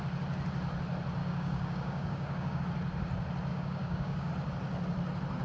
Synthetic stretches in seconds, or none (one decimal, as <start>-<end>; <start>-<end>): 1.2-2.6; 3.5-4.3